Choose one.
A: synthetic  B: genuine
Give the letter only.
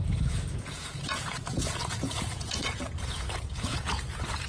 A